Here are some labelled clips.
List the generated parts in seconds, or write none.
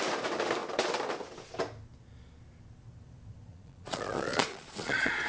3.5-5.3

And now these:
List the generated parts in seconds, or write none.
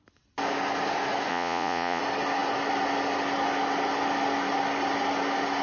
1.3-2.0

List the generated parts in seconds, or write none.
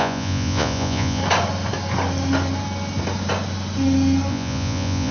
0.0-1.2; 4.3-5.1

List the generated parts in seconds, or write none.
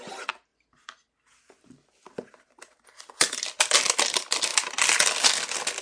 none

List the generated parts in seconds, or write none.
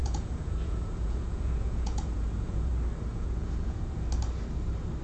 0.0-2.7; 3.1-3.9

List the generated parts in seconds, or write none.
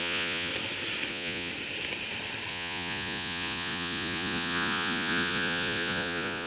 0.0-0.5; 1.1-1.5; 2.5-6.5